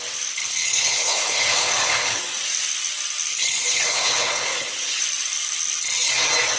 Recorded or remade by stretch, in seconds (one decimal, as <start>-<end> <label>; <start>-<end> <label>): 0.0-0.4 recorded; 0.4-2.2 remade; 2.2-3.3 recorded; 3.3-5.0 remade; 5.0-6.6 recorded

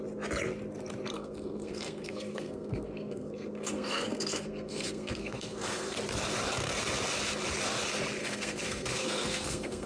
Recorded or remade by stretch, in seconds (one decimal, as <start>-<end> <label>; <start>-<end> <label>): 0.0-1.1 recorded; 1.1-6.0 remade; 6.0-8.2 recorded; 8.2-9.9 remade

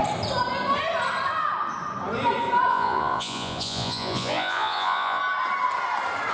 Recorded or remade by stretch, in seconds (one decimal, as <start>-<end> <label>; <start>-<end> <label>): 0.0-2.7 recorded; 2.7-5.2 remade; 5.2-6.3 recorded

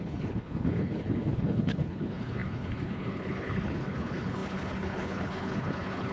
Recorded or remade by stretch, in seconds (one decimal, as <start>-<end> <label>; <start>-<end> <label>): 0.0-6.1 remade

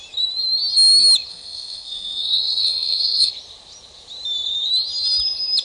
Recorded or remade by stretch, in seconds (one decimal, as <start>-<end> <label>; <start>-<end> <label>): 0.0-1.3 recorded; 1.3-3.3 remade; 3.3-5.6 recorded

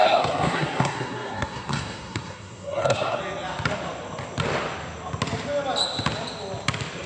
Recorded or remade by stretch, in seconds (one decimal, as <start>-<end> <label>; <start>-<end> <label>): 0.0-3.2 remade; 3.2-7.1 recorded